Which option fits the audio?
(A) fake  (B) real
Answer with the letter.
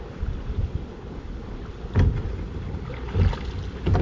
B